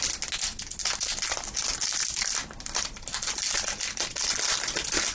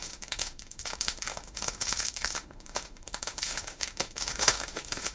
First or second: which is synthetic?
second